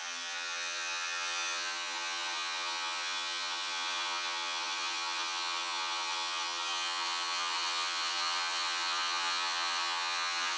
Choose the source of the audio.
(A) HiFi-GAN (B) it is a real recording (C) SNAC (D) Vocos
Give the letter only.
A